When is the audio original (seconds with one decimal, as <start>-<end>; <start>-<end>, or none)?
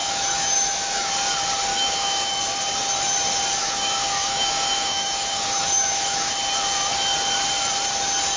1.1-1.7; 2.4-3.6; 6.3-8.4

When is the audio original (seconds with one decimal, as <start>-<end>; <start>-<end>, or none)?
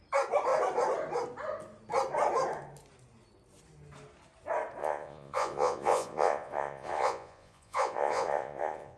0.0-4.8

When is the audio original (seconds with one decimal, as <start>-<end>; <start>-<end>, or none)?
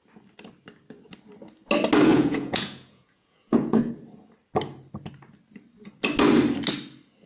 0.0-2.1; 4.0-7.3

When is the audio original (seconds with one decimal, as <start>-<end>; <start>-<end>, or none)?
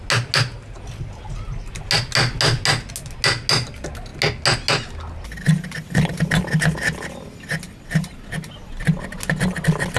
0.0-10.0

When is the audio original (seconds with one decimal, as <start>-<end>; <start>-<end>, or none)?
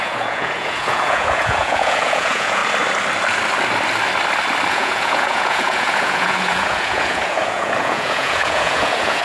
2.6-4.7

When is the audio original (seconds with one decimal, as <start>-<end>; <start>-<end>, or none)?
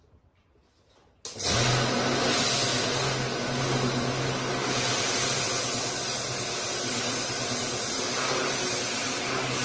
0.0-9.6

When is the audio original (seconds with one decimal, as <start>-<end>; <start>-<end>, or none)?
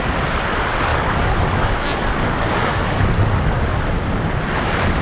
0.0-0.9; 3.9-5.0